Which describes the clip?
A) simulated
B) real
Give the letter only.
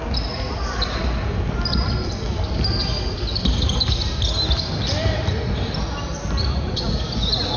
B